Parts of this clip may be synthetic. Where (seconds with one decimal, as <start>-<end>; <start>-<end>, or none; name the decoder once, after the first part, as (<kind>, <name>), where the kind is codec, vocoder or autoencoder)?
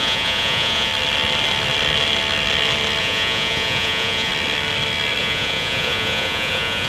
0.0-0.9 (vocoder, Vocos); 3.0-4.3; 5.2-6.9